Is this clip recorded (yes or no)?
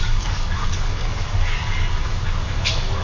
no